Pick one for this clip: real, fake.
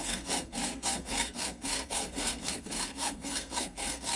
fake